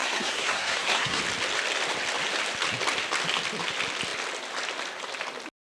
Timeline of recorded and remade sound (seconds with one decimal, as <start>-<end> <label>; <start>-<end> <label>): 0.0-1.2 remade; 1.2-5.7 recorded

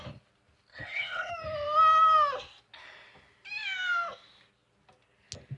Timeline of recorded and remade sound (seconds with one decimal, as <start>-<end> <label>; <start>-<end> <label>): 0.0-0.7 recorded; 0.7-1.3 remade; 1.3-5.6 recorded

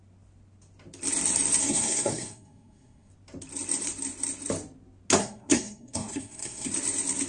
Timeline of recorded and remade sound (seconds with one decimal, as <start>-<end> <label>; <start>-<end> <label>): 0.0-1.6 recorded; 1.6-3.1 remade; 3.1-5.2 recorded; 5.2-6.7 remade; 6.7-7.3 recorded

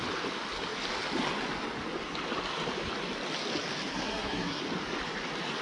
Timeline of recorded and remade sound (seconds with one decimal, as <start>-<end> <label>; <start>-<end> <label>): 0.0-3.9 recorded; 3.9-4.6 remade; 4.6-5.6 recorded

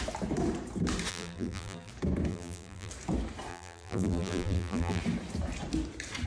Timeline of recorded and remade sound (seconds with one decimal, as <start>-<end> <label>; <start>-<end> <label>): 0.0-1.1 recorded; 1.1-1.9 remade; 1.9-2.3 recorded; 2.3-2.9 remade; 2.9-3.5 recorded; 3.5-5.0 remade; 5.0-6.3 recorded

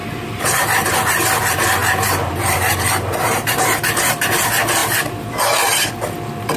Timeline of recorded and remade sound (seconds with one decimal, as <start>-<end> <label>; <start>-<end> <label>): 0.0-0.9 remade; 0.9-1.8 recorded; 1.8-4.3 remade; 4.3-4.8 recorded; 4.8-5.9 remade; 5.9-6.6 recorded

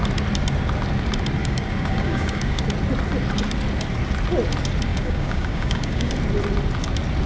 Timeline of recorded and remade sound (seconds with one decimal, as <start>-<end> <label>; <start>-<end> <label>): 0.0-1.4 recorded; 1.4-2.6 remade; 2.6-4.9 recorded; 4.9-6.1 remade; 6.1-7.3 recorded

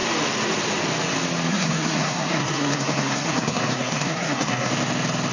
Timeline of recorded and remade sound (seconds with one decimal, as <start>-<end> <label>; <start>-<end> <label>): 0.0-1.5 recorded; 1.5-4.7 remade; 4.7-5.3 recorded